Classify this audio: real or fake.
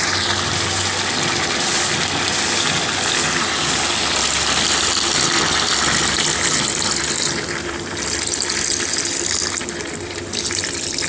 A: real